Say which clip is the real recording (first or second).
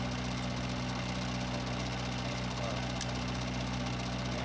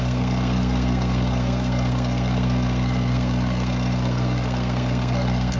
first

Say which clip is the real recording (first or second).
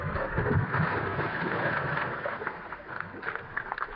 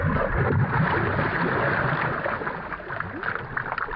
second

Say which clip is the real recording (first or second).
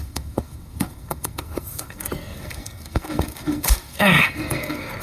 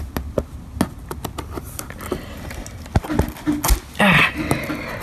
second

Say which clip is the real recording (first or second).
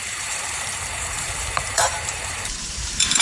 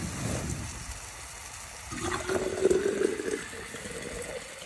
second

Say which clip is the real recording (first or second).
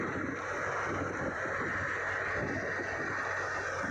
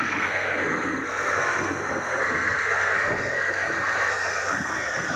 first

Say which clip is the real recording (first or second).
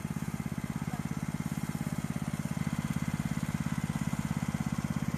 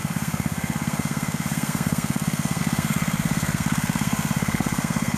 first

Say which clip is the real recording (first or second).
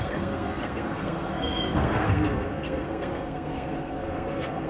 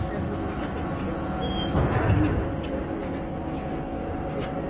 second